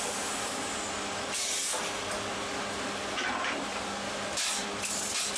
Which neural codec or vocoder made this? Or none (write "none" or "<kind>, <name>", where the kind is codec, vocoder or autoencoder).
none